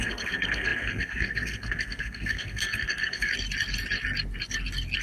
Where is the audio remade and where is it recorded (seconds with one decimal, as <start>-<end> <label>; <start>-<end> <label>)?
0.0-3.3 remade; 3.3-5.0 recorded